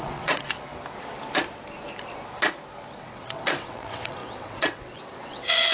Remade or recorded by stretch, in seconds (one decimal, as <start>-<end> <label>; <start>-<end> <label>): 0.0-0.7 remade; 0.7-3.0 recorded; 3.0-5.7 remade